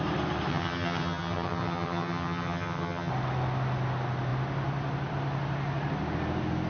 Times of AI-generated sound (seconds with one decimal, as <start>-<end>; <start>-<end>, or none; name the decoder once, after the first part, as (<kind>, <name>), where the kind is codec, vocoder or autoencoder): 0.5-3.1 (vocoder, HiFi-GAN)